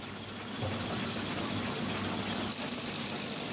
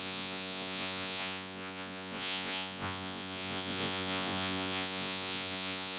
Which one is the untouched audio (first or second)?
first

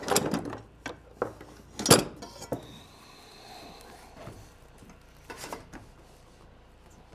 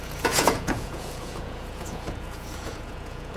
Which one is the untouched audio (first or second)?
first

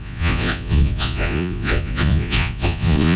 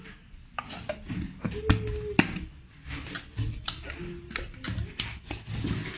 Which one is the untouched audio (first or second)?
second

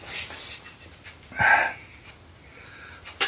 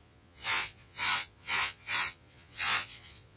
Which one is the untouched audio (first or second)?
first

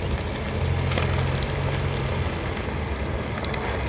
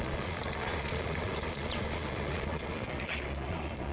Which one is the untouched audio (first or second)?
first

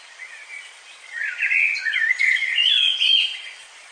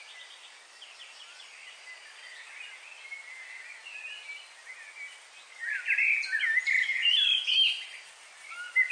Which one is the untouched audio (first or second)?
second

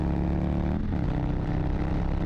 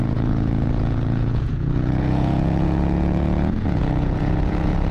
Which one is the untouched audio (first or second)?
first